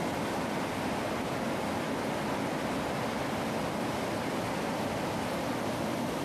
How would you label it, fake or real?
real